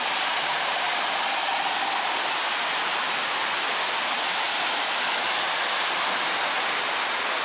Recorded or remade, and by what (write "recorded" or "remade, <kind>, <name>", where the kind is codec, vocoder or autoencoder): recorded